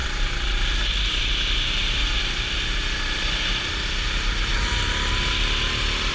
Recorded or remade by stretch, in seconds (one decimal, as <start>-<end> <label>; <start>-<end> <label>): 0.0-1.2 remade; 1.2-1.8 recorded; 1.8-3.8 remade; 3.8-4.5 recorded; 4.5-6.1 remade